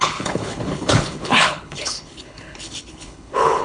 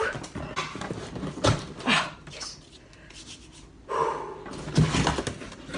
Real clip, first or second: second